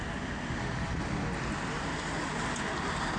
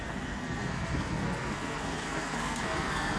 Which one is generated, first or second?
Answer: second